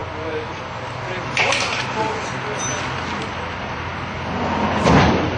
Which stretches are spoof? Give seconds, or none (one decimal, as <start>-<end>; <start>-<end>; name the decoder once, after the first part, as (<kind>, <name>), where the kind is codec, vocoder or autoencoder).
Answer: 3.2-3.9 (vocoder, BigVGAN v2); 5.0-5.4